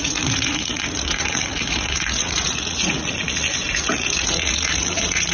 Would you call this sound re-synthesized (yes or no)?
yes